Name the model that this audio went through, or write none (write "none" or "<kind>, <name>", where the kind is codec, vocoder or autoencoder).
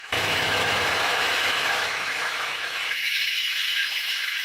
autoencoder, DAC-VAE